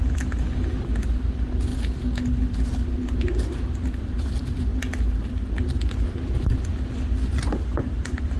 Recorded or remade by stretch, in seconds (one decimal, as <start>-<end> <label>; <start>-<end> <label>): 0.0-8.4 recorded